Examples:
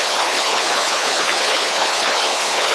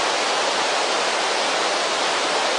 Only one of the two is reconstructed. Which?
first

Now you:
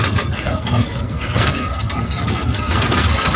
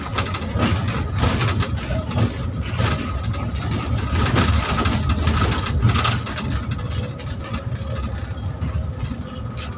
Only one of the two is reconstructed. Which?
first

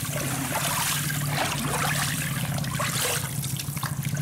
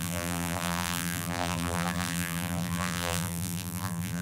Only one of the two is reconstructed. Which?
second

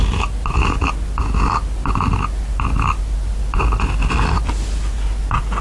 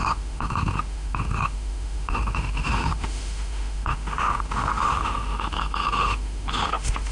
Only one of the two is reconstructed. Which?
second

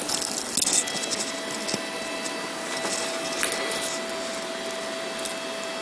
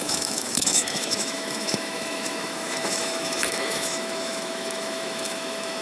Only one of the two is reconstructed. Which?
second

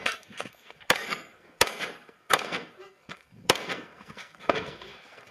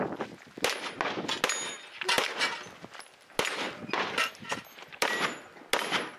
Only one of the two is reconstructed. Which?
first